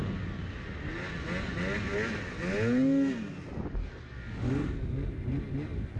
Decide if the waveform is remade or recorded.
recorded